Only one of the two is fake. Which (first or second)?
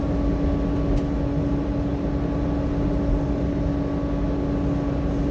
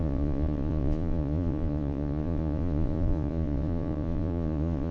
second